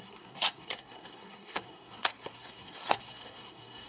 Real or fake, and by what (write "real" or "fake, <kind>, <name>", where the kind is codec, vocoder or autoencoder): fake, codec, SNAC